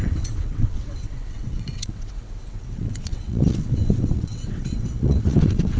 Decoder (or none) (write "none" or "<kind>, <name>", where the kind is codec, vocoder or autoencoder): vocoder, WaveNeXt